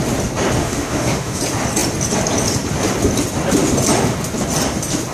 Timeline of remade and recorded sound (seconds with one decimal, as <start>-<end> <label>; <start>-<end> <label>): 0.0-0.6 recorded; 0.6-1.4 remade; 1.4-5.1 recorded

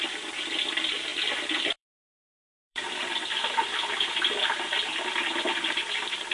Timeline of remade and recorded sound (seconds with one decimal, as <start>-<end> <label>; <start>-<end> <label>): 0.0-0.7 recorded; 0.7-1.1 remade; 1.1-1.7 recorded; 1.7-6.3 remade

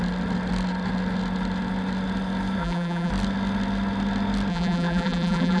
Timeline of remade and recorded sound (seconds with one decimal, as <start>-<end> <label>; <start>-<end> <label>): 0.0-2.6 recorded; 2.6-3.1 remade; 3.1-4.5 recorded; 4.5-5.6 remade

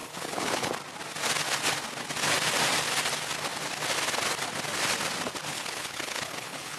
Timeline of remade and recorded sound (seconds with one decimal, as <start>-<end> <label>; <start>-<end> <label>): 0.0-0.7 remade; 0.7-5.5 recorded; 5.5-6.8 remade

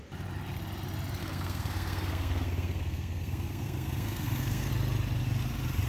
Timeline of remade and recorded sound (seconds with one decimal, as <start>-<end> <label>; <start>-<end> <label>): 0.0-1.2 recorded; 1.2-4.7 remade; 4.7-5.9 recorded